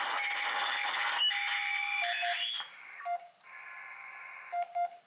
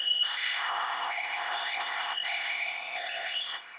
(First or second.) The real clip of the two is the first